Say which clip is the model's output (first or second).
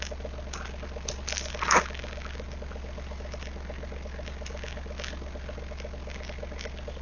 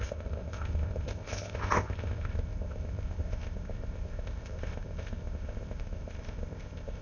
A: second